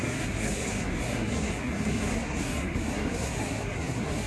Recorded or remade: remade